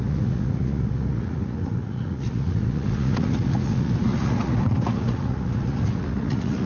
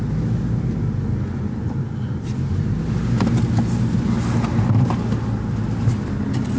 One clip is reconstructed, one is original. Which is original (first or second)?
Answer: second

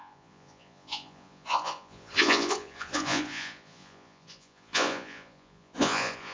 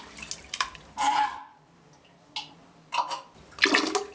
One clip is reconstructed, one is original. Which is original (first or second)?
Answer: second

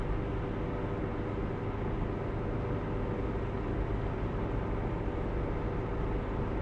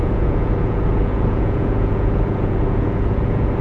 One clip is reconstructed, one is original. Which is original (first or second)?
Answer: first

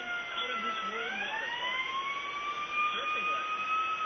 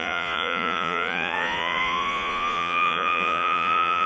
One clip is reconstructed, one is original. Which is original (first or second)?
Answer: first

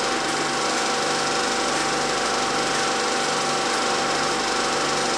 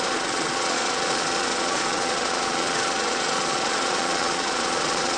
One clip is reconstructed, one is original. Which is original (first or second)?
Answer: first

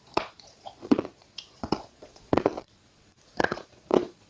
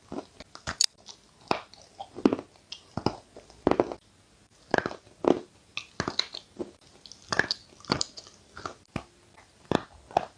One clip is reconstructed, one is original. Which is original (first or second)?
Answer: second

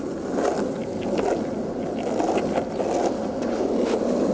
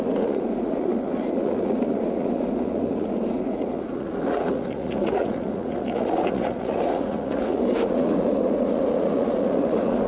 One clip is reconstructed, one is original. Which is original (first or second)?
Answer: first